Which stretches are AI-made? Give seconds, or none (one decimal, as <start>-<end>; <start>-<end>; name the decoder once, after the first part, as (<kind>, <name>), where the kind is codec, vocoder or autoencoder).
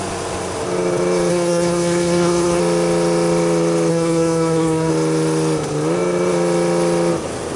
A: 1.3-2.6 (codec, SNAC); 3.9-4.9